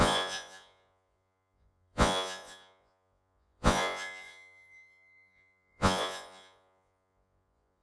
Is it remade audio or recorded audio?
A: remade